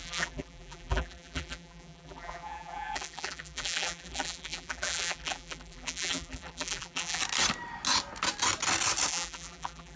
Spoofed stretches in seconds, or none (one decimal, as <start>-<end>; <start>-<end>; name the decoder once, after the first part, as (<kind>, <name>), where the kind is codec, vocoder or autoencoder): 0.0-7.2 (vocoder, BigVGAN v2); 9.1-10.0